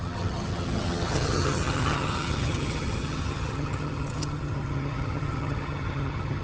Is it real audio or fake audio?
fake